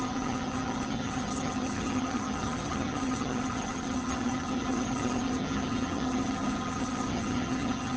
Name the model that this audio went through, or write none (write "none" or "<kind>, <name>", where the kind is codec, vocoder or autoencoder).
vocoder, HiFi-GAN